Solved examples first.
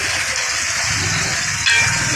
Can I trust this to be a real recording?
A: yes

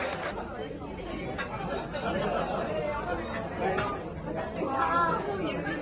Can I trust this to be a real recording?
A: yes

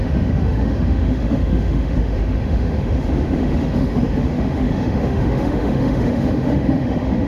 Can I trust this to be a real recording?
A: no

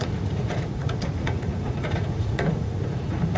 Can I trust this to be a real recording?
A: no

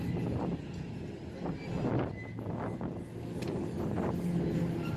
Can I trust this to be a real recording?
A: yes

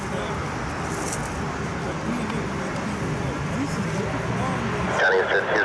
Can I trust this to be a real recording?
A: yes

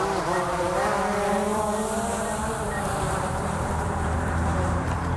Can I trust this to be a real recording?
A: no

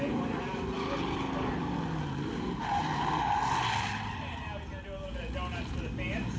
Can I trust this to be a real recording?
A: yes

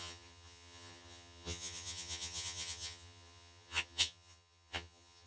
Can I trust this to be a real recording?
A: no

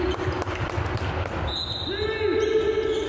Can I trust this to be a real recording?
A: yes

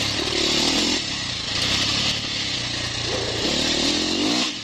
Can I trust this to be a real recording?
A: yes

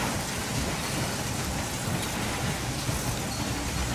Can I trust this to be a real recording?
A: yes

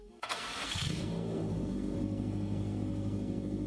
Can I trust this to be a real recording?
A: no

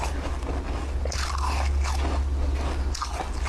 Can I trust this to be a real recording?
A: yes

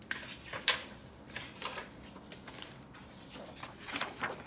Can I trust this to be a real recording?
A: yes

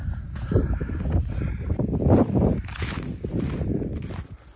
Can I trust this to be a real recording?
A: no